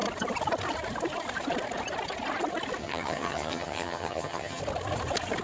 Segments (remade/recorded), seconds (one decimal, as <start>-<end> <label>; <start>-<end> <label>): 0.0-2.8 recorded; 2.8-4.6 remade; 4.6-5.4 recorded